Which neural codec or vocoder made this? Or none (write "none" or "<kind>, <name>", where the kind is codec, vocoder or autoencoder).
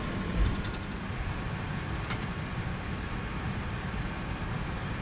none